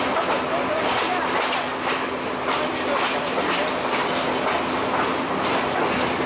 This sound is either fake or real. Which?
fake